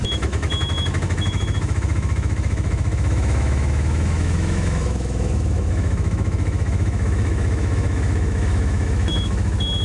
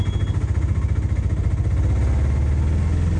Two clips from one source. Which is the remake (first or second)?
first